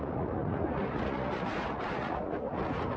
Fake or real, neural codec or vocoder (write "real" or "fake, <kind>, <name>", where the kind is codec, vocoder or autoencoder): fake, vocoder, Vocos